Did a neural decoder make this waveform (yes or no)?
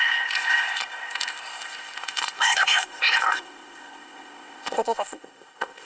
yes